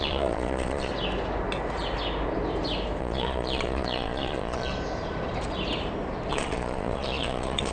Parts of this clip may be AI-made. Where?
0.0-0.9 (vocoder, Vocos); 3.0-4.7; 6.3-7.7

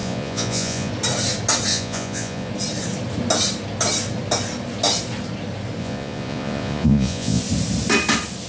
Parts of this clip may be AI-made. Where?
0.0-0.9 (vocoder, Vocos); 1.7-2.5; 5.8-7.4

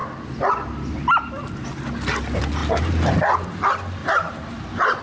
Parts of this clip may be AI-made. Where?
2.6-3.6 (vocoder, BigVGAN v2); 4.0-5.0

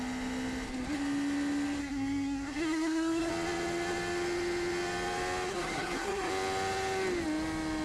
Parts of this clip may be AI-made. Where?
1.8-3.3 (codec, SNAC); 5.5-6.3

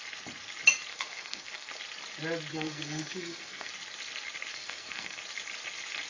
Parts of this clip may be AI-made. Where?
0.9-1.7 (codec, SNAC); 2.5-3.7; 4.5-5.2

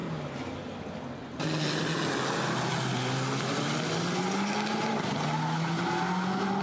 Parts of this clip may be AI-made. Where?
none

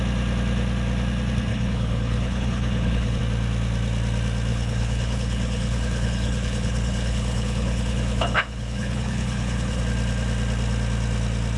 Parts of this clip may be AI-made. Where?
1.5-3.2 (codec, HILCodec); 4.5-9.8

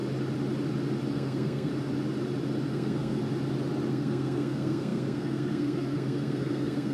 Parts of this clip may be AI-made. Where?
1.1-1.7 (codec, SNAC); 2.7-3.2; 3.9-6.9